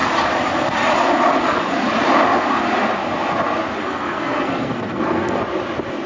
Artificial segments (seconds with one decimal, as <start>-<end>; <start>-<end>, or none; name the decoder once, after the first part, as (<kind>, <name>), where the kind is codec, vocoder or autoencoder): 3.8-5.4 (codec, SNAC)